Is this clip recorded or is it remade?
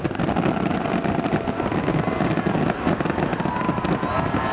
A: recorded